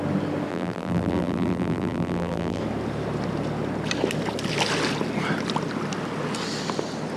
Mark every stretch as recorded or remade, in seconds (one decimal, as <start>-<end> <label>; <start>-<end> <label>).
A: 0.0-0.5 recorded; 0.5-2.6 remade; 2.6-7.2 recorded